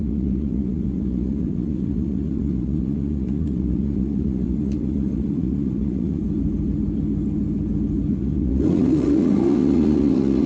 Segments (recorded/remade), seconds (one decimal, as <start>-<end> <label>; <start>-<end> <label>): 0.0-6.2 remade; 6.2-8.1 recorded; 8.1-10.5 remade